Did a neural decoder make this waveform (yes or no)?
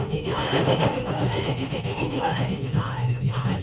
yes